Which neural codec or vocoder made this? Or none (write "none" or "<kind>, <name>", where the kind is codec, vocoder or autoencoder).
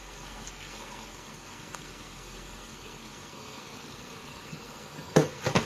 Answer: codec, SNAC